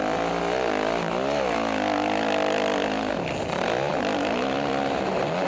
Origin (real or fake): real